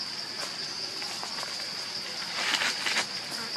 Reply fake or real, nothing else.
real